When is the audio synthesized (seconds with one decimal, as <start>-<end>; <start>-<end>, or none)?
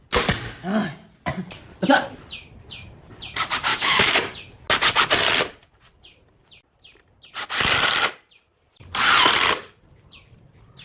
3.7-4.2